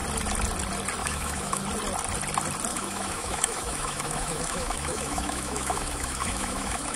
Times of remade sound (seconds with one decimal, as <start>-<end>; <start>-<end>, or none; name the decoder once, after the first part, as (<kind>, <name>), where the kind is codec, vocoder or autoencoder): 1.0-1.6 (autoencoder, DAC-VAE); 2.7-7.0